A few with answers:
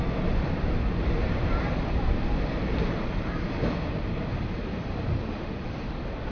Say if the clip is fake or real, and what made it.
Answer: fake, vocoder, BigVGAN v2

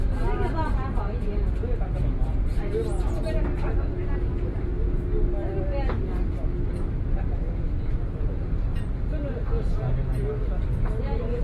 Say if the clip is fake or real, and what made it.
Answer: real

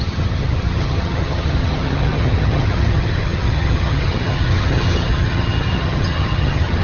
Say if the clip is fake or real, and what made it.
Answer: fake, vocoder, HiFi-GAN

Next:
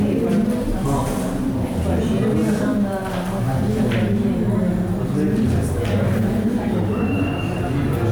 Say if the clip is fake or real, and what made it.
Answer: real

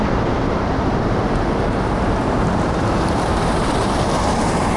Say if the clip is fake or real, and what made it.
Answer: fake, vocoder, BigVGAN v2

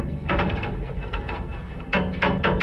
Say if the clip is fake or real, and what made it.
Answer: fake, codec, SNAC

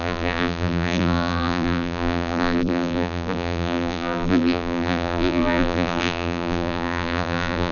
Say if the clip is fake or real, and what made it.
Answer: fake, vocoder, BigVGAN v2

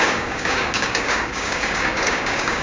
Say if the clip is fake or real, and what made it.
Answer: fake, codec, DAC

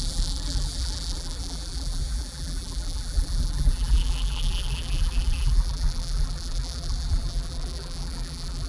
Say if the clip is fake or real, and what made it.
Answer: fake, vocoder, BigVGAN v2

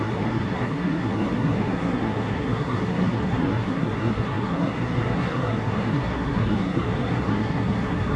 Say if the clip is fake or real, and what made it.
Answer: fake, codec, SNAC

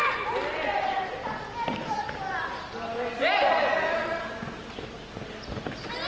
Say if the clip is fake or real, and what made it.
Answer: real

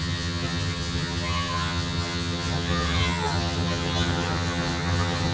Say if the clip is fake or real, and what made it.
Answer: fake, vocoder, HiFi-GAN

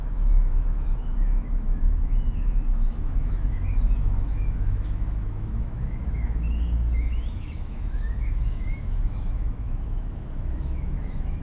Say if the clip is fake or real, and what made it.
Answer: fake, autoencoder, DAC-VAE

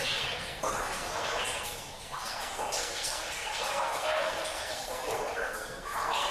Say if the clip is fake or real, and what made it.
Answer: fake, codec, SNAC